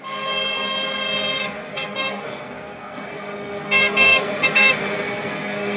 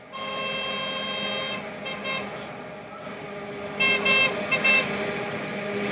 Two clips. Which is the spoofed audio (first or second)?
first